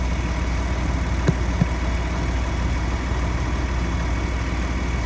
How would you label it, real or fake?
real